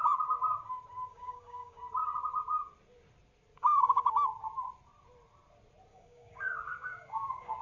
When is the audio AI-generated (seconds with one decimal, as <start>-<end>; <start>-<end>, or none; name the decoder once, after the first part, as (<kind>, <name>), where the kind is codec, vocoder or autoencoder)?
1.1-1.8 (codec, DAC); 3.6-4.2; 5.9-7.6

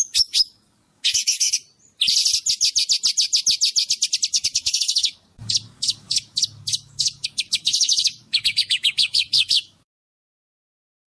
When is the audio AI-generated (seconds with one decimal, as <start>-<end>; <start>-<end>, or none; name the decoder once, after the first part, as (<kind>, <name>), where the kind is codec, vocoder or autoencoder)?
0.0-1.6 (codec, DAC); 4.3-11.1

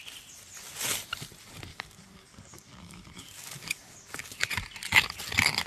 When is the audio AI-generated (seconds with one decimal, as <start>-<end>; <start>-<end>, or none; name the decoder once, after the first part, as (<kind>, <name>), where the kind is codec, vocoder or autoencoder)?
1.7-4.5 (codec, DAC)

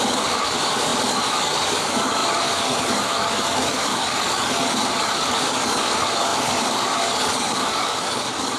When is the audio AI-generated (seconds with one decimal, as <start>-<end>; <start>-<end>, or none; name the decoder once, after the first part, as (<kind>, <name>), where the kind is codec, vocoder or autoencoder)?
0.0-8.6 (codec, DAC)

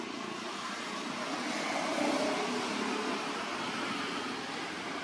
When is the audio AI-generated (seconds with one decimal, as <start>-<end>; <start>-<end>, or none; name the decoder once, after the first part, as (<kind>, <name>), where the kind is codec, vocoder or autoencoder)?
none

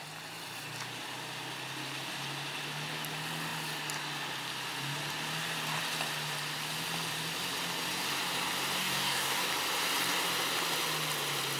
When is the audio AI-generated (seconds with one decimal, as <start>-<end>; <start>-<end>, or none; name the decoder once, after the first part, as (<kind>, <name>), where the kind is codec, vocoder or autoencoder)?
8.8-9.5 (codec, DAC)

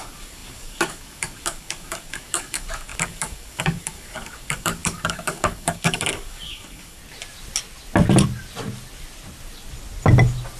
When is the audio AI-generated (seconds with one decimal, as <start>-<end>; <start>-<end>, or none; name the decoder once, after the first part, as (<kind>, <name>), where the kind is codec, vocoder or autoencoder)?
0.0-7.0 (codec, DAC)